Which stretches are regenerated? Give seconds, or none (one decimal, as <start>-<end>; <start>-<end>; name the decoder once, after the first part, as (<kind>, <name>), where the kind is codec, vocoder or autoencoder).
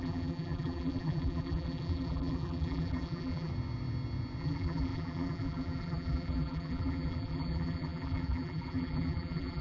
0.0-3.5 (vocoder, BigVGAN v2); 4.4-9.6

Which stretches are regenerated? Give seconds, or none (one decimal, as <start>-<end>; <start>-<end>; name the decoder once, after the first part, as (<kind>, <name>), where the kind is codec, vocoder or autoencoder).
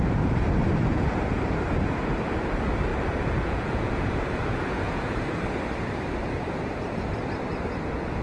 2.9-5.4 (vocoder, Vocos)